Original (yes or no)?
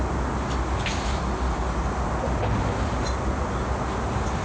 yes